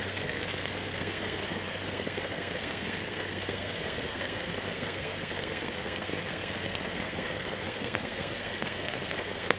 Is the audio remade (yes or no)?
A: yes